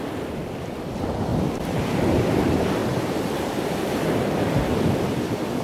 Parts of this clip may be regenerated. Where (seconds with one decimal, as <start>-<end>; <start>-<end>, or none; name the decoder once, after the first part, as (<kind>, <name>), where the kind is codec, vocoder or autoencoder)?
1.3-2.4 (vocoder, BigVGAN v2); 2.8-5.0